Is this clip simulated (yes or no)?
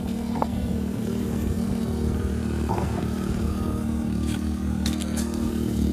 yes